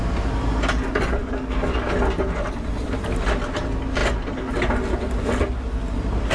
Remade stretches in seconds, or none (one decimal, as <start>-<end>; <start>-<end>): 1.2-1.9